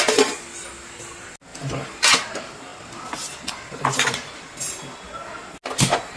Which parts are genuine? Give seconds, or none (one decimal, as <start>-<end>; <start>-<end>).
0.0-1.5; 2.1-6.2

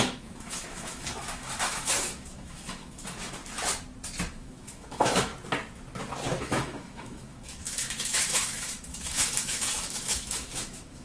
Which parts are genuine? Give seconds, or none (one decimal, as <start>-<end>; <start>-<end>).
3.4-4.3; 5.3-6.4